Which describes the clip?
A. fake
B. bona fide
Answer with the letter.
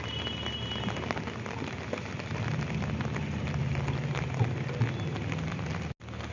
B